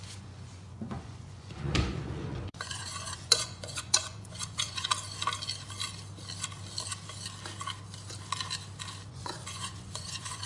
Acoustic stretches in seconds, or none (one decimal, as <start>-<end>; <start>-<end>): 4.9-9.1